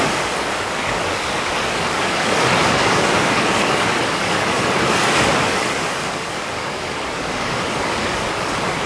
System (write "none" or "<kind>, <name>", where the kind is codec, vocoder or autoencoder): codec, DAC